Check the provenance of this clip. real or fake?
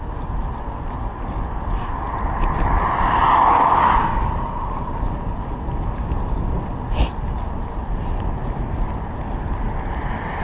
real